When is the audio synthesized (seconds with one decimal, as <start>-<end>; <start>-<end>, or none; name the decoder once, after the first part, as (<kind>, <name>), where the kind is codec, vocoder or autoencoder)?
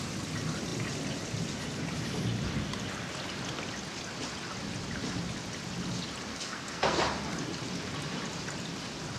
6.3-7.0 (codec, SNAC)